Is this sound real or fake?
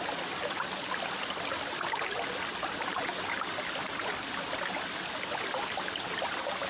real